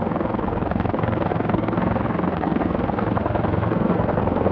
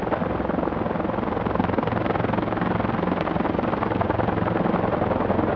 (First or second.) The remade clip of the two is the first